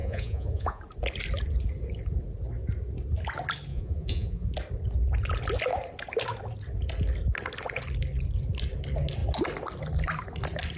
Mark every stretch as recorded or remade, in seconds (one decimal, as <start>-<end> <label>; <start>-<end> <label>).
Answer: 0.0-0.8 remade; 0.8-3.7 recorded; 3.7-4.5 remade; 4.5-10.8 recorded